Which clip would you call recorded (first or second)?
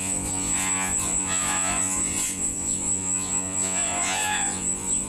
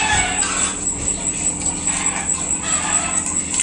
second